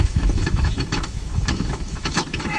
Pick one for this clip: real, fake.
fake